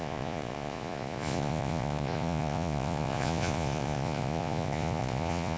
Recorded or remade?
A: remade